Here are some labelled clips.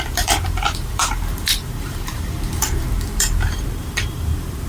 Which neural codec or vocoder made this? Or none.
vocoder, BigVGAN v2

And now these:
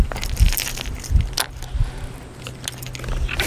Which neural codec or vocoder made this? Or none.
none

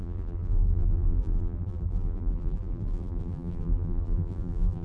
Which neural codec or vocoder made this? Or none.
vocoder, BigVGAN v2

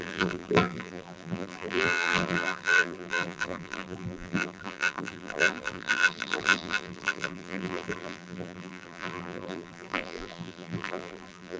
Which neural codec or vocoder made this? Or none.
vocoder, BigVGAN v2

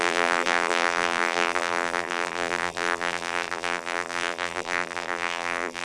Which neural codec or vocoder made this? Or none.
vocoder, BigVGAN v2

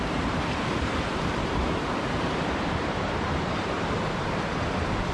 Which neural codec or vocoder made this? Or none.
vocoder, BigVGAN v2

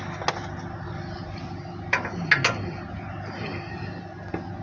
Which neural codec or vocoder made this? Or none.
none